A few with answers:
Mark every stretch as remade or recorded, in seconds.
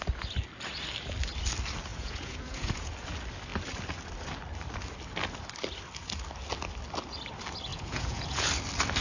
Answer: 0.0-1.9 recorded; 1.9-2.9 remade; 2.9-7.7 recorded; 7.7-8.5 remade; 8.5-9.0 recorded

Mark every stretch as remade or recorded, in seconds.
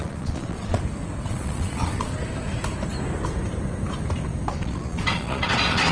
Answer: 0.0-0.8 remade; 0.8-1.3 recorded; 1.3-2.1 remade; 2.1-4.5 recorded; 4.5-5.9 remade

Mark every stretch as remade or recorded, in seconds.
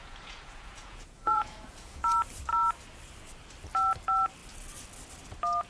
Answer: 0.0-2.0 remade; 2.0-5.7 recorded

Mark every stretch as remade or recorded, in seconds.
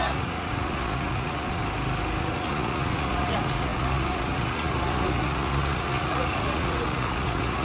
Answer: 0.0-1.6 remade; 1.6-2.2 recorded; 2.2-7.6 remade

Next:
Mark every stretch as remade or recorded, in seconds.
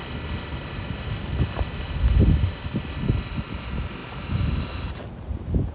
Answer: 0.0-5.7 recorded